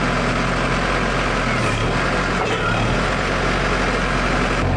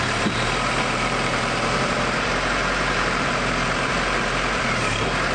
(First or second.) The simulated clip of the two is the second